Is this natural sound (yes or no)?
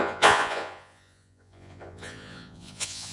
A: no